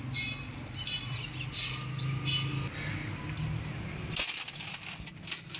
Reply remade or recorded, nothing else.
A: recorded